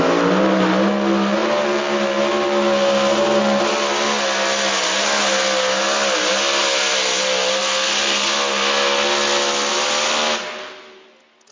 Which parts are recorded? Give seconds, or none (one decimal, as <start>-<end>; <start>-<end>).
0.0-11.5